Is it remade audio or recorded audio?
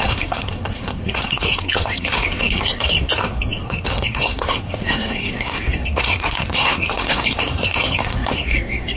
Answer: remade